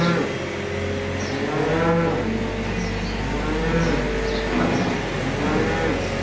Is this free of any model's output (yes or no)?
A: yes